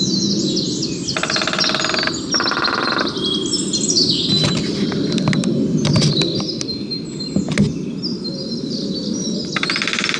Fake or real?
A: real